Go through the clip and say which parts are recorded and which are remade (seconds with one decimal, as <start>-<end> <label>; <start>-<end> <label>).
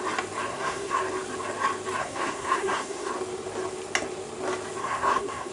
0.0-0.5 recorded; 0.5-1.0 remade; 1.0-2.0 recorded; 2.0-3.1 remade; 3.1-4.8 recorded; 4.8-5.5 remade